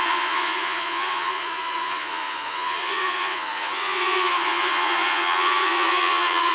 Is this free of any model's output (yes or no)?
no